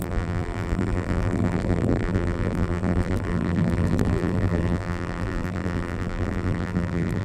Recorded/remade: remade